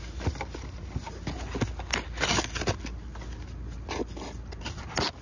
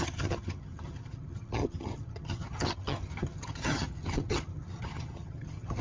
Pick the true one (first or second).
first